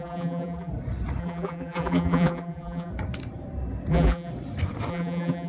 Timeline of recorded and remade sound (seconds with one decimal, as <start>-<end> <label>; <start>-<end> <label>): 0.0-0.7 remade; 0.7-1.2 recorded; 1.2-2.9 remade; 2.9-3.9 recorded; 3.9-4.3 remade; 4.3-4.9 recorded; 4.9-5.5 remade